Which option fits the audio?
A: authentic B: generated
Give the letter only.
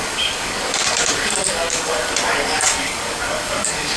B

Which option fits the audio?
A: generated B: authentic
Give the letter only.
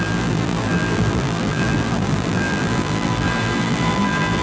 A